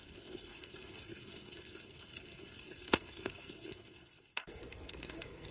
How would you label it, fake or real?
fake